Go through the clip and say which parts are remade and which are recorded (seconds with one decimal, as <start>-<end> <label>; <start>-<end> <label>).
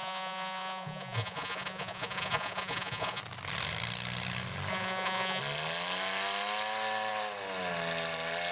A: 0.0-3.2 remade; 3.2-4.7 recorded; 4.7-5.4 remade; 5.4-8.5 recorded